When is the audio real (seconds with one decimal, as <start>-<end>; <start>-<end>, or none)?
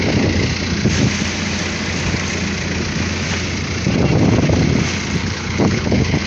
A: 0.0-5.2